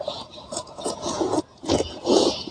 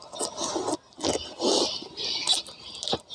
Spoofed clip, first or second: first